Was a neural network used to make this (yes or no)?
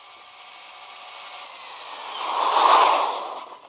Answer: no